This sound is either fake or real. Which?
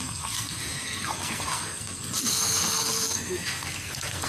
fake